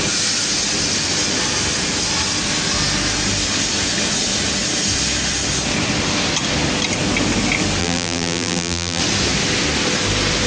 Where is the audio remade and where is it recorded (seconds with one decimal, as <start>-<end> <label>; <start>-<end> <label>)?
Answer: 0.0-7.8 recorded; 7.8-9.0 remade; 9.0-10.5 recorded